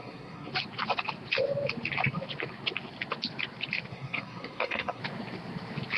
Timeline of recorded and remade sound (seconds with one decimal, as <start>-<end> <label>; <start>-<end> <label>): 0.0-0.5 remade; 0.5-3.9 recorded; 3.9-5.0 remade; 5.0-6.0 recorded